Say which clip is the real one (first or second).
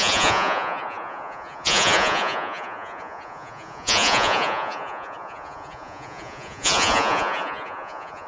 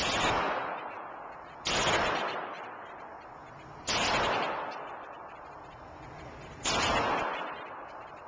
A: second